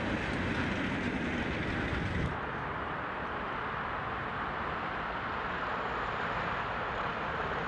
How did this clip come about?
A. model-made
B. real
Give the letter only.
B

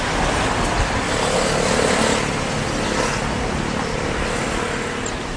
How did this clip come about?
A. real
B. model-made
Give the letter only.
A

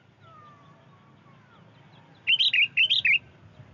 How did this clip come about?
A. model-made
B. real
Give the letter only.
B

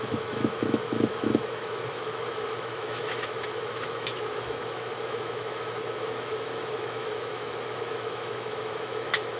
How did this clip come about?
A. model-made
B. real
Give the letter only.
A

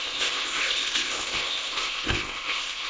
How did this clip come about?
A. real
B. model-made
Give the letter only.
B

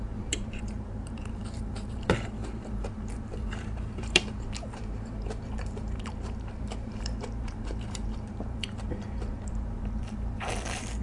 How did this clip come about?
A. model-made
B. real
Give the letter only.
A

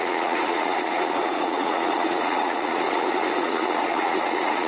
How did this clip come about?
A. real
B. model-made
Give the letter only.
B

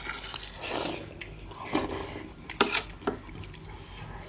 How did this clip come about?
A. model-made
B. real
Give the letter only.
B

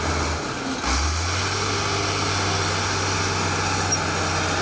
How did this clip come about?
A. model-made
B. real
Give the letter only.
B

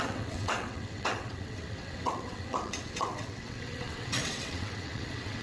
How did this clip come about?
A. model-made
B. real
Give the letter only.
A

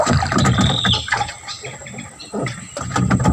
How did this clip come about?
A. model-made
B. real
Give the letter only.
B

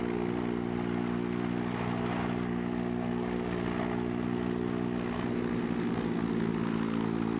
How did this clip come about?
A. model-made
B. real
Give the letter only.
B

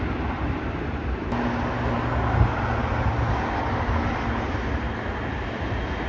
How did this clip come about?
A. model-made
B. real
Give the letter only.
B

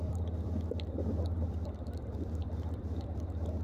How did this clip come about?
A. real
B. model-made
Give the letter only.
B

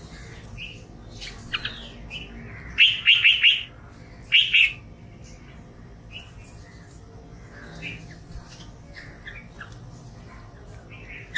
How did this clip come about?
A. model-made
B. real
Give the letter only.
B